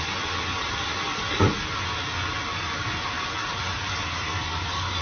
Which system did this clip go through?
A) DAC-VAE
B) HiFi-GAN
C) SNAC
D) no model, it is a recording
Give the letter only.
D